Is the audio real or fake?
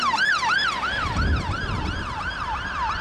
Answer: real